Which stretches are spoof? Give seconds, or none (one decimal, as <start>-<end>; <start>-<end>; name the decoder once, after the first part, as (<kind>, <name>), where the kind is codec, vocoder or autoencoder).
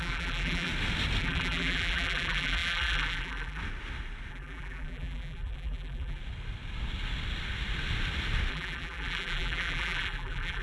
0.0-0.7 (vocoder, BigVGAN v2); 1.2-3.6; 4.3-6.2; 8.5-10.6